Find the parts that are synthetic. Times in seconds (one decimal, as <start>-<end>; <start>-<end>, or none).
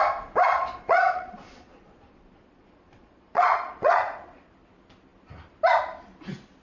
0.5-4.5